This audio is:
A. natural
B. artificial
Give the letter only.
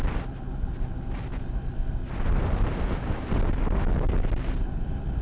B